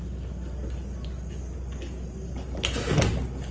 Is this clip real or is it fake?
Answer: real